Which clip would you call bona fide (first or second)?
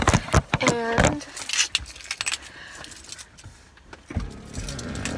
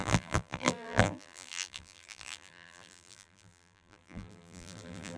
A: first